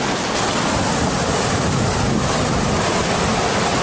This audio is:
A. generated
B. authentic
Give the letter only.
B